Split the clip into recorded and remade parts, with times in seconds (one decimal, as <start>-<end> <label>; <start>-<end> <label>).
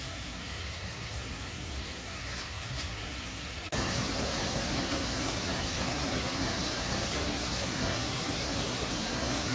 0.0-9.5 remade